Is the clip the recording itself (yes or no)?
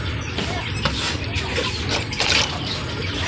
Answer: yes